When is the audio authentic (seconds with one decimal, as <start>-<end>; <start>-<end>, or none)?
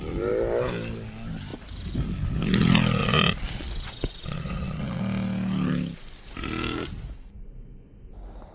0.0-3.0; 5.0-8.5